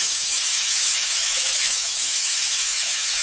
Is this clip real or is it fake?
fake